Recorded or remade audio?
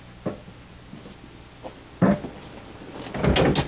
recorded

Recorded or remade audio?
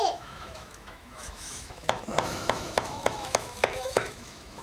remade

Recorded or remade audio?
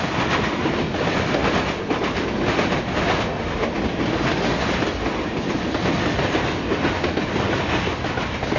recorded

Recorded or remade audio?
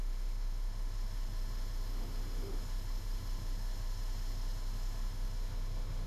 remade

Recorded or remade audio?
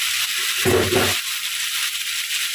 remade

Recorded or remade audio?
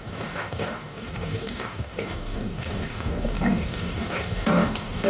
remade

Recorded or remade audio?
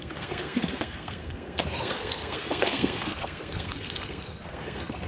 remade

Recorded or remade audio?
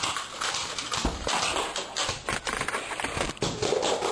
recorded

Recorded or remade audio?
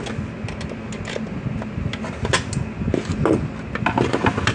recorded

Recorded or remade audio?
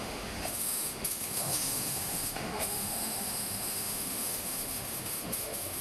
remade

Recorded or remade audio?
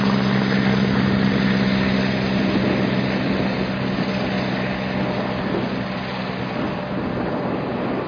recorded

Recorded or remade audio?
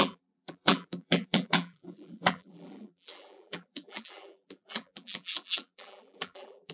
remade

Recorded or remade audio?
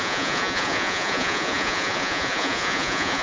remade